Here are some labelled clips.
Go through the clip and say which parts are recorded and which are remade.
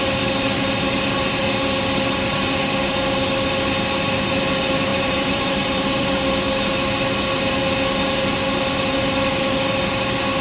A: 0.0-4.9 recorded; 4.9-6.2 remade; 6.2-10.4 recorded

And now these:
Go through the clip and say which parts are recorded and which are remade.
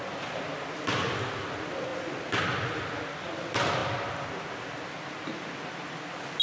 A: 0.0-6.4 recorded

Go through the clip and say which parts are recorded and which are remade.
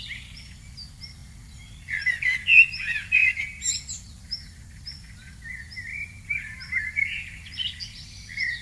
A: 0.0-3.2 recorded; 3.2-3.7 remade; 3.7-8.6 recorded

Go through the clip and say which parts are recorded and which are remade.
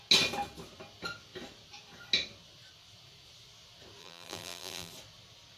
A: 0.0-4.0 recorded; 4.0-4.9 remade; 4.9-5.6 recorded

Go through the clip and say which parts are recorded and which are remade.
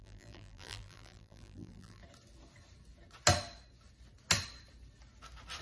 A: 0.0-2.0 remade; 2.0-5.6 recorded